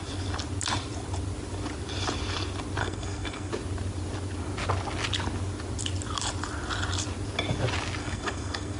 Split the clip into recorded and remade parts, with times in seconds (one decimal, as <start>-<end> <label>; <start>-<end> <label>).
0.0-2.8 recorded; 2.8-3.5 remade; 3.5-8.0 recorded; 8.0-8.8 remade